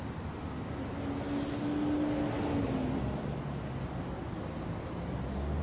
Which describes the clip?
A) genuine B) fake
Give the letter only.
A